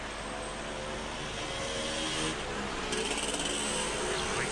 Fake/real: real